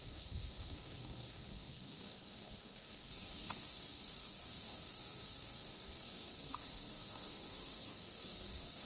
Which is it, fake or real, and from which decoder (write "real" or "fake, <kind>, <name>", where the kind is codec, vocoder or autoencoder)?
fake, codec, SNAC